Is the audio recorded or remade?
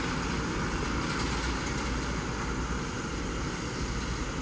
recorded